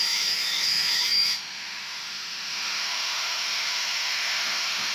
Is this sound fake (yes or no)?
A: yes